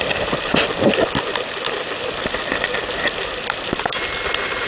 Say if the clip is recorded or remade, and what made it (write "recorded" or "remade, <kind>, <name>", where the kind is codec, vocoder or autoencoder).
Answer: recorded